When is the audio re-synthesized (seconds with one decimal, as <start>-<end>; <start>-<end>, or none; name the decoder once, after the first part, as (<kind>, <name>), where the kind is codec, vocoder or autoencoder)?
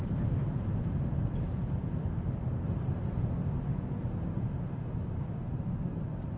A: none